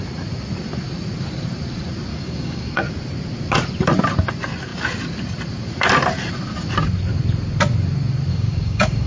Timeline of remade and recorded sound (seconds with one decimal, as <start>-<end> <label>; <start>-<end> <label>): 0.0-2.1 recorded; 2.1-2.8 remade; 2.8-8.3 recorded; 8.3-9.1 remade